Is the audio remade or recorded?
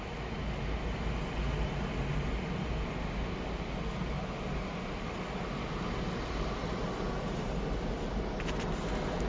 recorded